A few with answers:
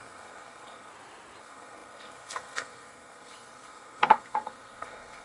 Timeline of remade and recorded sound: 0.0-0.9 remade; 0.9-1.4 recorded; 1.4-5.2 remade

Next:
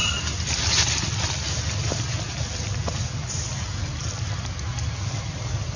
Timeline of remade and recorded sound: 0.0-5.8 recorded